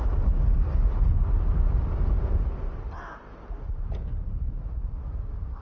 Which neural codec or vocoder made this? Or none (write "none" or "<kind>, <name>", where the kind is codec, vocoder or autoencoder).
none